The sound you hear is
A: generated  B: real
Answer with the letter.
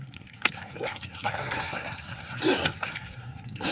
A